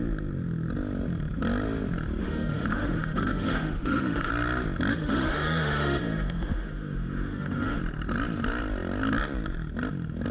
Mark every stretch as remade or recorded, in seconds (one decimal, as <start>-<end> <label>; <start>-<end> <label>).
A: 0.0-2.2 recorded; 2.2-4.3 remade; 4.3-4.9 recorded; 4.9-7.8 remade; 7.8-10.3 recorded